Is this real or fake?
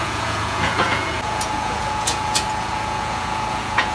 fake